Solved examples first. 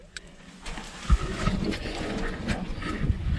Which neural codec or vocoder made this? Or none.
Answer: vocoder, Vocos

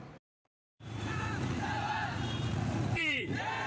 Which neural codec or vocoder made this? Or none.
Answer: vocoder, Vocos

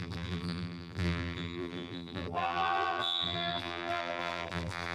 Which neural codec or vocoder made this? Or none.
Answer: vocoder, BigVGAN v2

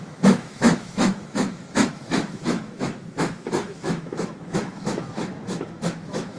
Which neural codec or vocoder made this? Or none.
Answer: autoencoder, DAC-VAE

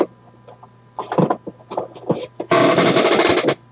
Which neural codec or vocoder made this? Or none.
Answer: none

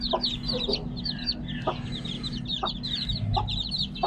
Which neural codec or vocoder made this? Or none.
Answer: none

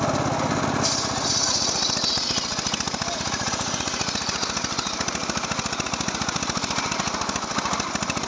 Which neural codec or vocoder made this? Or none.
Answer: none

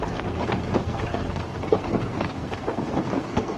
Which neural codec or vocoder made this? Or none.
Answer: codec, SNAC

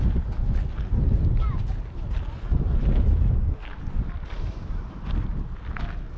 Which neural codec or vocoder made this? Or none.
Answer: none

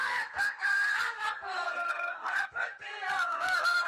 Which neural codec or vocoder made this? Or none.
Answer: codec, SNAC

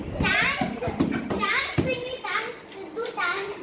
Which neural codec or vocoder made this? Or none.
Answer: none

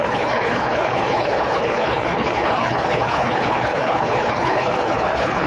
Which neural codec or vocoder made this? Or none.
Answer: codec, HILCodec